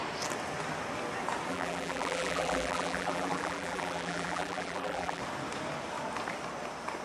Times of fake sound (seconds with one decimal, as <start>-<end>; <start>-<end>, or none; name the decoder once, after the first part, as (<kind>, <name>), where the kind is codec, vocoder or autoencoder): 1.5-5.2 (vocoder, BigVGAN v2)